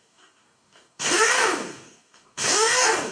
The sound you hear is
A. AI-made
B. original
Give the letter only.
A